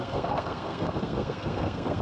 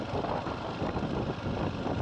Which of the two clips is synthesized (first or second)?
first